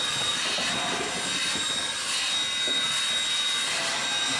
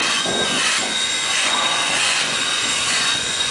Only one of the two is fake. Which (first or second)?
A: second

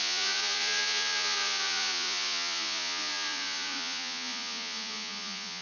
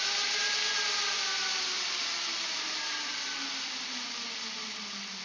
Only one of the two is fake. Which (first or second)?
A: first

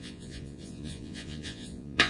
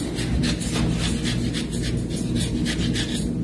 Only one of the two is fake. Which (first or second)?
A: first